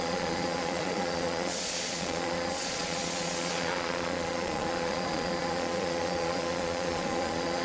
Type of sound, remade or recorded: remade